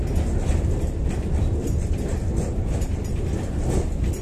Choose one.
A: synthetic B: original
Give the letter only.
B